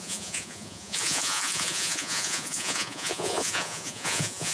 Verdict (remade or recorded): remade